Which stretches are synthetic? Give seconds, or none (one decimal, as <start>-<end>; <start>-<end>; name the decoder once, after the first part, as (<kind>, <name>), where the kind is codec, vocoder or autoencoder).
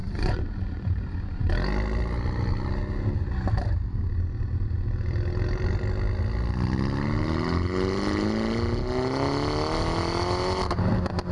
0.0-1.4 (vocoder, Vocos)